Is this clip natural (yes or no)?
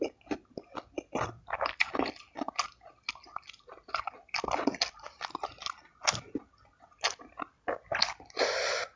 yes